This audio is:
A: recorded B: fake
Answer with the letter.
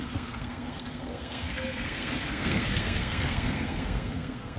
B